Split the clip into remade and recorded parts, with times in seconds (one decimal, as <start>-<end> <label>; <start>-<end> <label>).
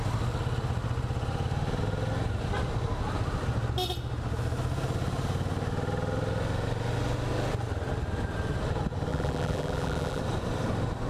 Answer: 0.0-9.1 recorded; 9.1-10.2 remade; 10.2-11.1 recorded